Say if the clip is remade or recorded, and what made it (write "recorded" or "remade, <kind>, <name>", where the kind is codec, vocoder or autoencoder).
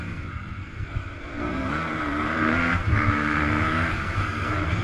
remade, codec, SNAC